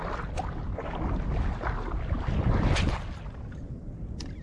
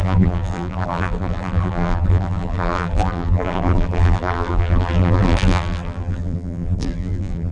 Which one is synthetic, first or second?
second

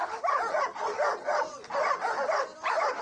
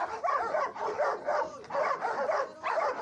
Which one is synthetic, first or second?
second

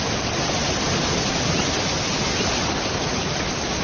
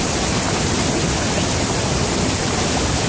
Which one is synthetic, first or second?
first